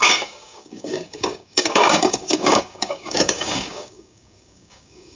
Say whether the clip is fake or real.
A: fake